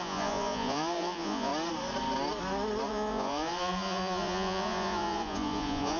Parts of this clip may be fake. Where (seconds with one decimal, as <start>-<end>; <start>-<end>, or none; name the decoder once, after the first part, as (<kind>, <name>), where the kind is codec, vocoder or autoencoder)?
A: 0.0-1.5 (vocoder, Vocos); 2.9-6.0